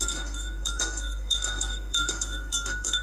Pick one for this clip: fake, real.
fake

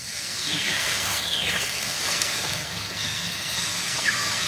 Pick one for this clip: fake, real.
fake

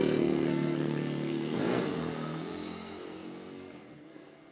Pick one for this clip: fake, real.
fake